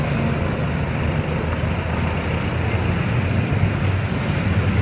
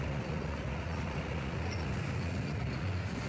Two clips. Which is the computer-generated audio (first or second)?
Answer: second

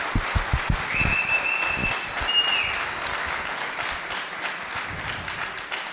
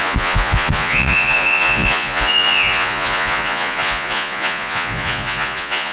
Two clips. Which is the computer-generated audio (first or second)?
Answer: second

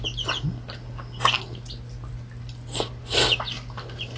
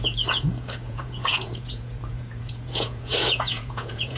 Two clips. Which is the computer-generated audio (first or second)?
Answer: second